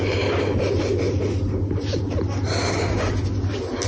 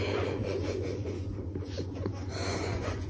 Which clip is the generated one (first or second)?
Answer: second